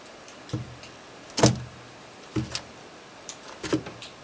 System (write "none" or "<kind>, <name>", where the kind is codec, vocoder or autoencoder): none